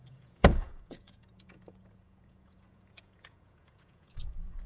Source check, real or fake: fake